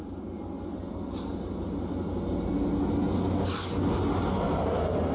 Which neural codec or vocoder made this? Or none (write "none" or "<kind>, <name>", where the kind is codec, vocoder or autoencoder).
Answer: none